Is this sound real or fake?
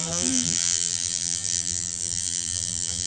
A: fake